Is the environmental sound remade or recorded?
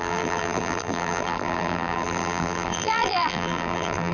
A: remade